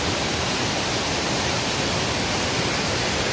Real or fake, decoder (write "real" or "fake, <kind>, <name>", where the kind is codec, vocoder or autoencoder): real